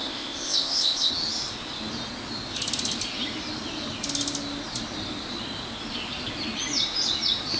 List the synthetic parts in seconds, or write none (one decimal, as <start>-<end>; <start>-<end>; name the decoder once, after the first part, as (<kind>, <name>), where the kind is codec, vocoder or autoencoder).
0.0-1.1 (codec, ZipCodec)